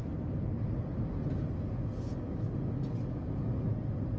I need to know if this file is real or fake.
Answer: real